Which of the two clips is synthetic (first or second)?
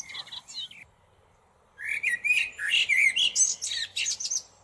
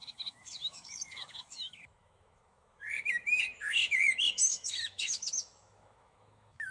second